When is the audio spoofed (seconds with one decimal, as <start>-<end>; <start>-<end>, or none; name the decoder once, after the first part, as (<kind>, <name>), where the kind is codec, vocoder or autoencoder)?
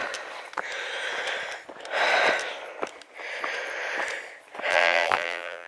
4.7-5.7 (vocoder, BigVGAN v2)